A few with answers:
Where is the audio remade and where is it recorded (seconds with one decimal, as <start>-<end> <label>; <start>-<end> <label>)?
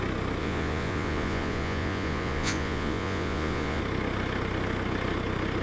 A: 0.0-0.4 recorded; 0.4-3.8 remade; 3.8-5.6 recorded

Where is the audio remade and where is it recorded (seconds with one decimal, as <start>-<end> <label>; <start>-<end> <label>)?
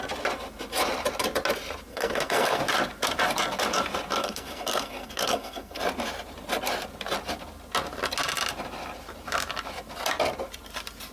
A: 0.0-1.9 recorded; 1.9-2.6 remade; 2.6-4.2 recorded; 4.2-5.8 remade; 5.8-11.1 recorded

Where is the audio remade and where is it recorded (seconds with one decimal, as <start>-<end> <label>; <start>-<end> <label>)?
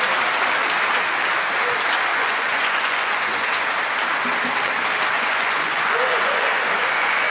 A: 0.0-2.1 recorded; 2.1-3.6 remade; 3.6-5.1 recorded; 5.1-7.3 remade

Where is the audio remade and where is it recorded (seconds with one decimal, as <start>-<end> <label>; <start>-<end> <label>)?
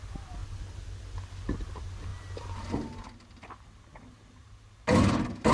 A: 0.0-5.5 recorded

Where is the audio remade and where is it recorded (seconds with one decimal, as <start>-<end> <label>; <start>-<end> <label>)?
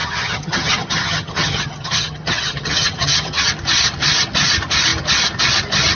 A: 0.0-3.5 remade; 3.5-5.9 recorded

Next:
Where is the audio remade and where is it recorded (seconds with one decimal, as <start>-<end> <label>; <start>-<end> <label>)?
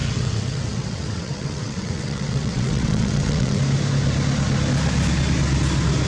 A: 0.0-3.6 remade; 3.6-6.1 recorded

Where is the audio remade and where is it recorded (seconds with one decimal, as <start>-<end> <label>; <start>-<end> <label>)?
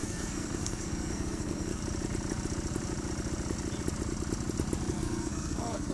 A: 0.0-1.8 remade; 1.8-4.9 recorded; 4.9-5.9 remade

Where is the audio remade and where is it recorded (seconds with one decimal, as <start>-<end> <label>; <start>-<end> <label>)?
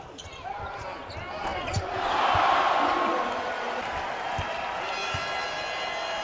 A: 0.0-1.5 recorded; 1.5-3.2 remade; 3.2-5.0 recorded; 5.0-5.5 remade; 5.5-6.2 recorded